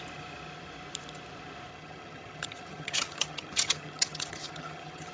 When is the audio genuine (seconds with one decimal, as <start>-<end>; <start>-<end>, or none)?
0.0-1.7